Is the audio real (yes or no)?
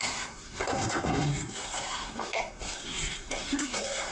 no